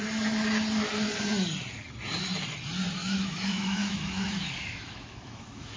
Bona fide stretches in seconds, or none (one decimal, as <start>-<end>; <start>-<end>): 0.0-3.0